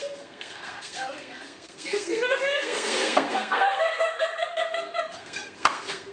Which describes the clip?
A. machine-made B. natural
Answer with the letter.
A